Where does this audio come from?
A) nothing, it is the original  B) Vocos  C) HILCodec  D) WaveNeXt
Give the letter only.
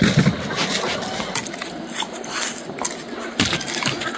A